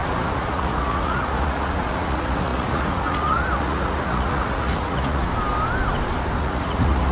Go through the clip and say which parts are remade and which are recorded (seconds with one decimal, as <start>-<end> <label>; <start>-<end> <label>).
0.0-5.3 remade; 5.3-6.4 recorded; 6.4-7.1 remade